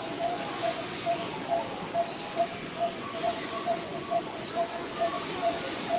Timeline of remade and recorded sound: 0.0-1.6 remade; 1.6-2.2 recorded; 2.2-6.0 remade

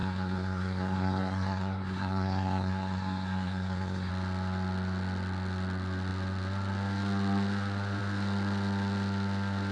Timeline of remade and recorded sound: 0.0-4.1 remade; 4.1-9.7 recorded

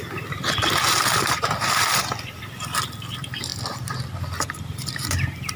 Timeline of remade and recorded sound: 0.0-5.6 remade

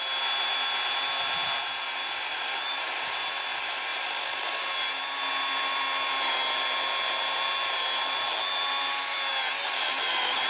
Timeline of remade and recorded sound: 0.0-10.5 recorded